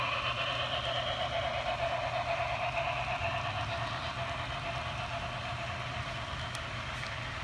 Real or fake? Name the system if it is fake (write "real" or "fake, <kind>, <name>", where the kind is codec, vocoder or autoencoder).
real